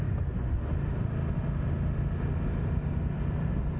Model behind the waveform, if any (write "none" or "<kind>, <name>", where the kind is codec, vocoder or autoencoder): none